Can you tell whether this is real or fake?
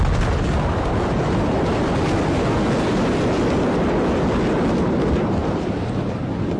real